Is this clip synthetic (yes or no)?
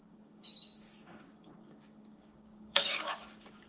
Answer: yes